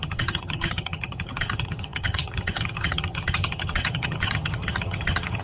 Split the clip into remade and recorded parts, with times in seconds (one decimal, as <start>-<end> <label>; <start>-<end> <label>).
0.0-5.4 remade